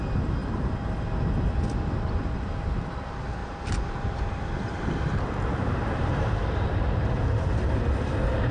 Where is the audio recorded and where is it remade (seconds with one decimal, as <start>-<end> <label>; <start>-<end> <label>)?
0.0-3.4 recorded; 3.4-7.1 remade; 7.1-8.5 recorded